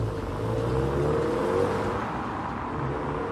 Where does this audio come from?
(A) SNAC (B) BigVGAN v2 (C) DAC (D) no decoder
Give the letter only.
D